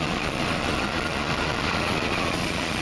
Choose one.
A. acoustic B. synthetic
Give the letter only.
B